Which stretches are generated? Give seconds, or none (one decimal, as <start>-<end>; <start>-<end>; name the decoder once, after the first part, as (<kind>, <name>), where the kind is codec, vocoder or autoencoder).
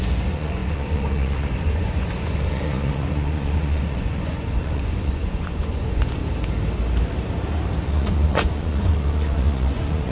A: 0.0-6.2 (vocoder, Vocos); 7.8-10.1